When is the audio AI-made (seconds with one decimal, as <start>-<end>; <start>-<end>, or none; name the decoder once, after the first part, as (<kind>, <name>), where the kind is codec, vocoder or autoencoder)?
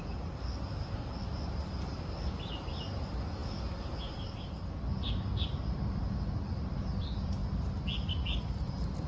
none